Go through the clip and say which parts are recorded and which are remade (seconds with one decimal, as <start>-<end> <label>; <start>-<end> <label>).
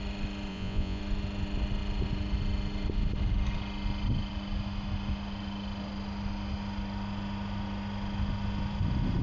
0.0-0.5 recorded; 0.5-1.0 remade; 1.0-9.2 recorded